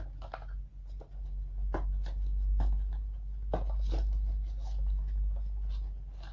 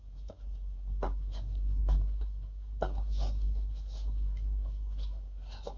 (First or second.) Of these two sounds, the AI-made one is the second